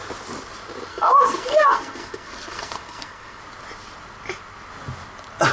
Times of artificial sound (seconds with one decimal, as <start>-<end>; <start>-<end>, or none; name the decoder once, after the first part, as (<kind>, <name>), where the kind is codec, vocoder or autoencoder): 0.9-3.4 (codec, SNAC)